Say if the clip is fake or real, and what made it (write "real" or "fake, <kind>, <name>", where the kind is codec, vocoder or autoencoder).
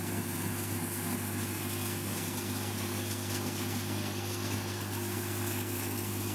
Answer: fake, codec, SNAC